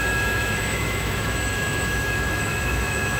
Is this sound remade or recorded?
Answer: remade